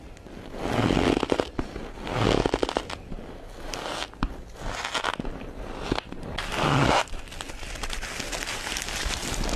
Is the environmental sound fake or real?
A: real